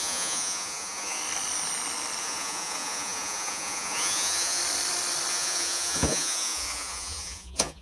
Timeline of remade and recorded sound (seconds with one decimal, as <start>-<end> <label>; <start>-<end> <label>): 0.0-1.2 remade; 1.2-2.2 recorded; 2.2-4.6 remade; 4.6-5.3 recorded; 5.3-7.8 remade